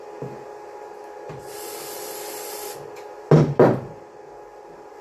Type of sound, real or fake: real